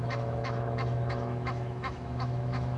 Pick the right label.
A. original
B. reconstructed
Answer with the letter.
B